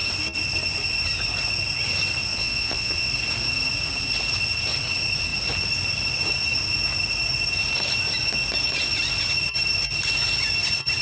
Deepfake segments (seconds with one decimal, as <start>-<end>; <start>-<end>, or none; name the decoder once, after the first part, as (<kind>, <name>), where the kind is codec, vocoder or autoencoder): 2.3-3.1 (vocoder, Vocos)